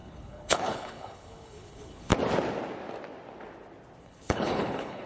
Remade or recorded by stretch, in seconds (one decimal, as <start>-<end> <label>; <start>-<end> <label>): 0.0-2.1 remade; 2.1-4.0 recorded; 4.0-5.1 remade